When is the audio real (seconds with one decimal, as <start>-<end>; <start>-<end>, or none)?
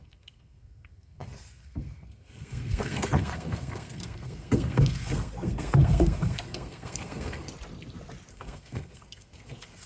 7.5-8.3